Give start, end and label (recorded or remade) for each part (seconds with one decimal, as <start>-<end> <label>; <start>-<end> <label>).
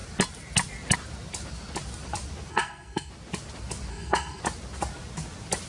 0.0-2.5 recorded; 2.5-3.1 remade; 3.1-3.9 recorded; 3.9-4.4 remade; 4.4-5.7 recorded